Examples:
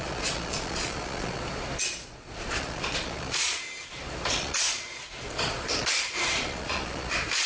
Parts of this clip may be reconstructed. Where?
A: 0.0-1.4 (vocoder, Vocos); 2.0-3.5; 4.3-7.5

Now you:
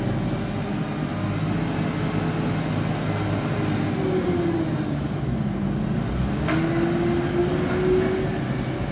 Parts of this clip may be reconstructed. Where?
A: none